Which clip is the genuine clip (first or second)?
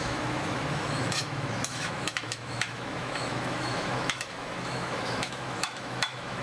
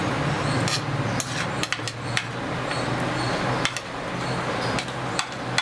second